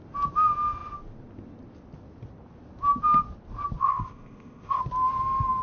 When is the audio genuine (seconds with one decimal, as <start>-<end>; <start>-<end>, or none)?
0.0-3.8; 4.8-5.6